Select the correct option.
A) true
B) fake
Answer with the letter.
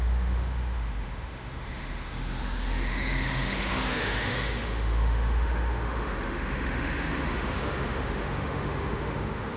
B